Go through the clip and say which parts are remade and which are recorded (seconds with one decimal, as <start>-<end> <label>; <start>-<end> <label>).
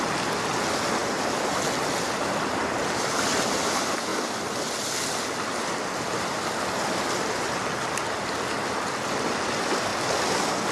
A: 0.0-10.7 recorded